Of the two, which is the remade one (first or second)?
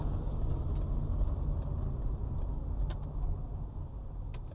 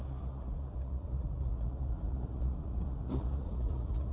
second